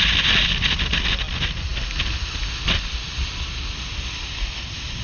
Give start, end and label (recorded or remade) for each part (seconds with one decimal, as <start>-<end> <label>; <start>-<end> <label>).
0.0-5.0 recorded